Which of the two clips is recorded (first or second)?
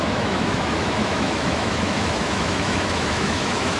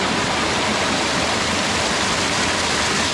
second